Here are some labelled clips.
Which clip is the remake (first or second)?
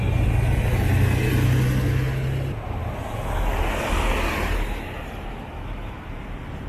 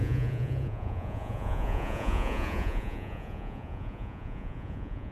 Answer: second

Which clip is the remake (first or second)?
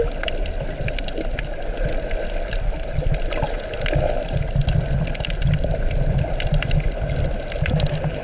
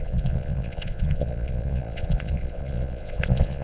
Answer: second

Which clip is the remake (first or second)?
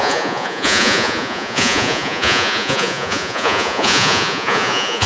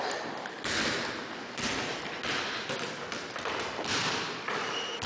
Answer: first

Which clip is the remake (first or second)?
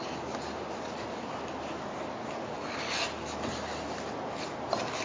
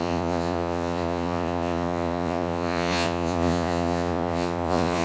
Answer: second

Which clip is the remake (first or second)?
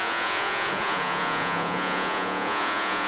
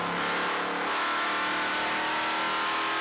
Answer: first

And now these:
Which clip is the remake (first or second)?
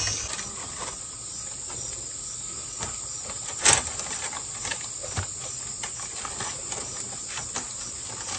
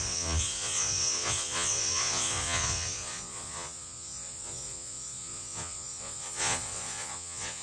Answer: second